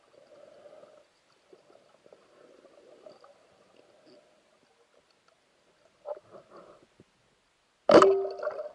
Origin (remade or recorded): recorded